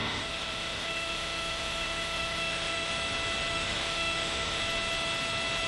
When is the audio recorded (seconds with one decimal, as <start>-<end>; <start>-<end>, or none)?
2.9-3.5; 4.6-5.7